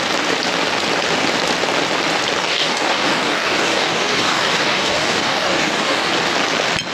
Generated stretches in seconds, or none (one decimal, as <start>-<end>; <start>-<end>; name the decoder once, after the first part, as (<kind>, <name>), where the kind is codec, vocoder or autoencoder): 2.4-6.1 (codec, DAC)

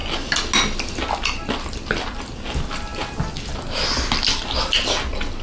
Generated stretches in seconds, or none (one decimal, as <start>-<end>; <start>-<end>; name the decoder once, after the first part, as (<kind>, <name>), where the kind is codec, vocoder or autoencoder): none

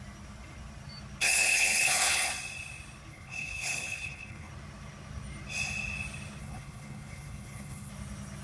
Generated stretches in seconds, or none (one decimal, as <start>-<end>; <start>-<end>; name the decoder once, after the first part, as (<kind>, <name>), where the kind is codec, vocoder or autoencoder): 1.2-2.3 (codec, HILCodec); 3.1-4.5; 6.4-7.9

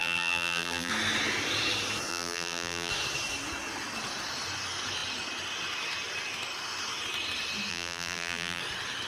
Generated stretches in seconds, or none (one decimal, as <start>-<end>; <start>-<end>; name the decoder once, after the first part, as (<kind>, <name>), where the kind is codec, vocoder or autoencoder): 0.0-0.9 (vocoder, BigVGAN v2); 2.1-2.9; 7.7-8.6

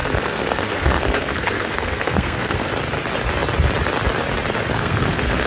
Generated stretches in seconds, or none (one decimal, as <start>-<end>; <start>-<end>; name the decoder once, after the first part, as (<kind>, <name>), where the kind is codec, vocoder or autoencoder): 0.0-2.7 (codec, SNAC); 4.7-5.5